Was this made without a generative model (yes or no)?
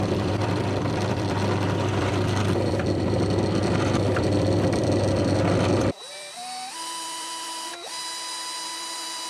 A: no